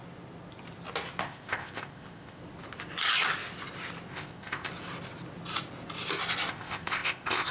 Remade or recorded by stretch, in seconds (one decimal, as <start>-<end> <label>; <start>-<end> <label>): 0.0-1.2 recorded; 1.2-2.4 remade; 2.4-4.1 recorded; 4.1-4.7 remade; 4.7-6.5 recorded; 6.5-7.5 remade